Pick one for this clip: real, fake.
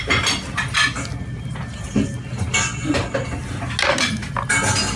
real